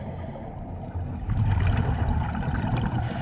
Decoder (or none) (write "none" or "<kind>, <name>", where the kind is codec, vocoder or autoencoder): none